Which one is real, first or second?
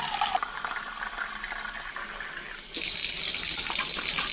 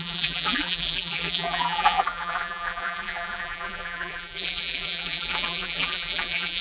first